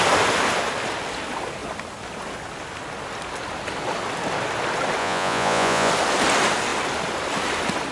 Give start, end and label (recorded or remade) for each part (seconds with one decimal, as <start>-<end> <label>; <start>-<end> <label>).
0.0-5.0 recorded; 5.0-5.9 remade; 5.9-7.9 recorded